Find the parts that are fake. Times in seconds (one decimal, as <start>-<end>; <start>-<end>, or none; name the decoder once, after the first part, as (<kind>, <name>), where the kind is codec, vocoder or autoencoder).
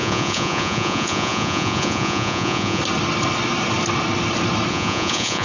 0.0-2.8 (vocoder, Vocos); 4.7-5.4